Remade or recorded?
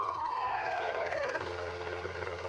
remade